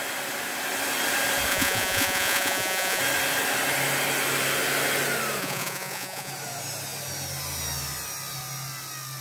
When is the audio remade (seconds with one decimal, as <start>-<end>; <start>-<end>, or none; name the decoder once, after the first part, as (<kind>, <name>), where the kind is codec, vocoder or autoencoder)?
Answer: 1.5-3.0 (vocoder, Vocos); 5.4-6.3